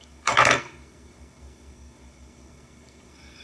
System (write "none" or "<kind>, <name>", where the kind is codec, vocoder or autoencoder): codec, SNAC